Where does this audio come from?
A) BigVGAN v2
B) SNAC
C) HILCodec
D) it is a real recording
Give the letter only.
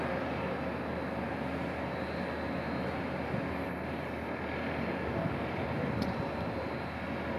D